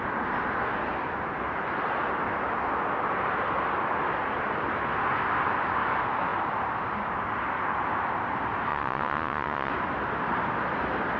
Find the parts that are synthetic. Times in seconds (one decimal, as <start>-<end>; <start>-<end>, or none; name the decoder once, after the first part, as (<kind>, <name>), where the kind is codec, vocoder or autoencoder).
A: 8.7-9.7 (vocoder, Vocos)